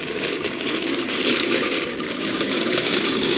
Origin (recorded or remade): remade